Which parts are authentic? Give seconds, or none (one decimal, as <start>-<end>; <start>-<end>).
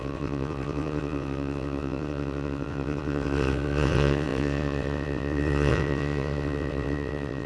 none